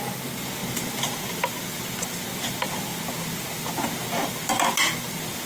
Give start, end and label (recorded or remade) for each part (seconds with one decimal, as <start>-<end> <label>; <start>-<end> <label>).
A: 0.0-5.5 recorded